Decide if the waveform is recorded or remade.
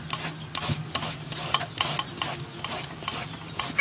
recorded